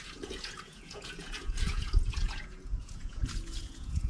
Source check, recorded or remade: remade